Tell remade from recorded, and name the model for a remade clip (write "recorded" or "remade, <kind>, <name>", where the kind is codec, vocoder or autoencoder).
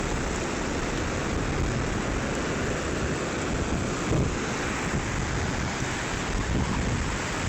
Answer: recorded